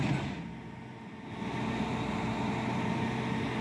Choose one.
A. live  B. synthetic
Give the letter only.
A